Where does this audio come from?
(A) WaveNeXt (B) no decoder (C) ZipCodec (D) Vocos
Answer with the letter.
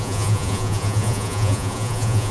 D